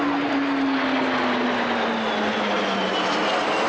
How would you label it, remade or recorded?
recorded